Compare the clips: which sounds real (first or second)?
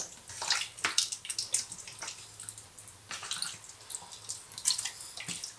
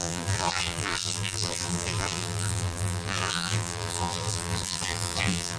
first